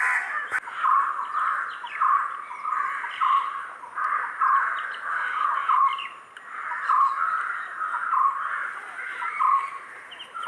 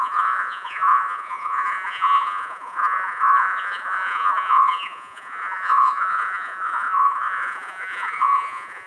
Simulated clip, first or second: second